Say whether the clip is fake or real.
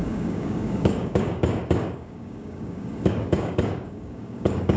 fake